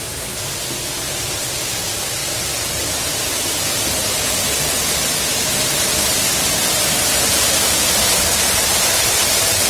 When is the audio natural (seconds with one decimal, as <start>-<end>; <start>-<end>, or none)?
0.0-9.7